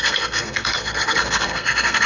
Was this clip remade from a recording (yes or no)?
yes